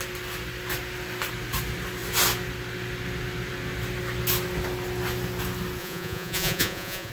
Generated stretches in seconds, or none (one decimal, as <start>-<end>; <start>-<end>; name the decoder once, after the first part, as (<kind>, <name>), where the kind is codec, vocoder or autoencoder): 5.8-7.1 (vocoder, Vocos)